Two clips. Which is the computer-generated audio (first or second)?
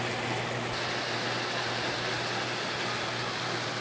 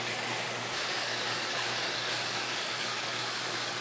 second